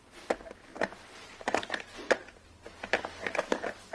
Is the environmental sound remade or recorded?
recorded